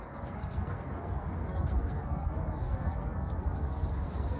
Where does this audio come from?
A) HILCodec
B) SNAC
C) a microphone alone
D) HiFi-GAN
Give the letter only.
B